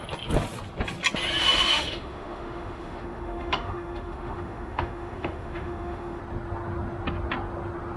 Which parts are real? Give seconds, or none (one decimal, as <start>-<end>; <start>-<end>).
0.0-1.4; 6.2-8.0